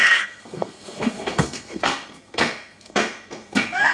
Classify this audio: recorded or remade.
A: remade